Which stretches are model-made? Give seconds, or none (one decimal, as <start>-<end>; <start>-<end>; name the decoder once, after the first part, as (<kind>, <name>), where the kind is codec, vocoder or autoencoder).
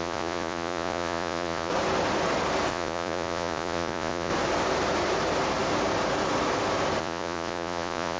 0.0-1.7 (vocoder, Vocos); 2.7-4.3; 7.0-8.2